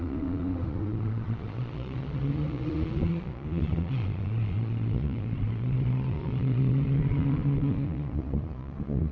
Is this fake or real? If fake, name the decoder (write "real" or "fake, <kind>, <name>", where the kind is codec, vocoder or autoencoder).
fake, vocoder, Vocos